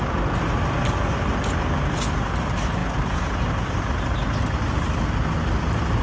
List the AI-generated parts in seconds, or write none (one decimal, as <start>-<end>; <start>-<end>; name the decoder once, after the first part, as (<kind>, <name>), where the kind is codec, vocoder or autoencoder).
none